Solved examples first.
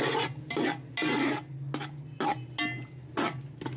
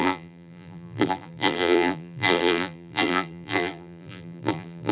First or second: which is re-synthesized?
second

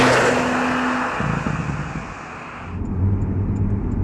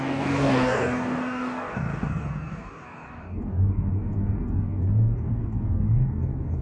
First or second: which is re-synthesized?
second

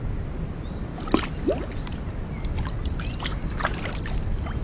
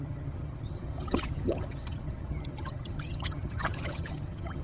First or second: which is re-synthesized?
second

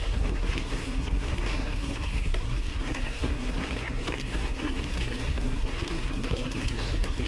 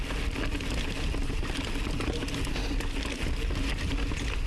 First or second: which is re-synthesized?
first